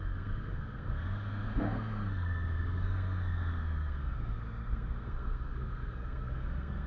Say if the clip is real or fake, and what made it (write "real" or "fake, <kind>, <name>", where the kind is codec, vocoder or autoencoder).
fake, codec, SNAC